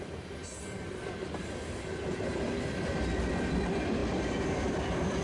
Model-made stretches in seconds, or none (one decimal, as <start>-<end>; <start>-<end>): 0.0-0.4; 3.5-5.2